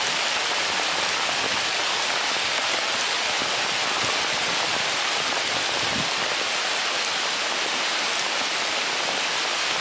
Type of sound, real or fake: real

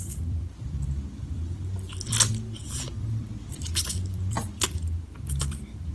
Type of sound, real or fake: fake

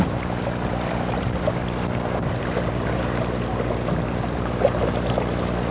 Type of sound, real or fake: real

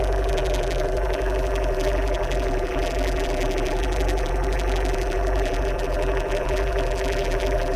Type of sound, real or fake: fake